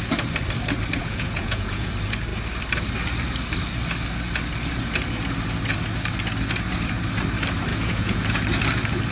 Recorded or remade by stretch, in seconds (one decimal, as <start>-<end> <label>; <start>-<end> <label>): 0.0-1.0 recorded; 1.0-1.9 remade; 1.9-7.7 recorded; 7.7-8.4 remade; 8.4-9.1 recorded